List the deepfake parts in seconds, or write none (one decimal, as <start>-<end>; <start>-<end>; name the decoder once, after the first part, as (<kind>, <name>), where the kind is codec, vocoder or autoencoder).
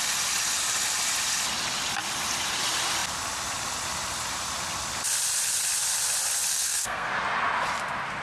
6.5-7.1 (codec, SNAC)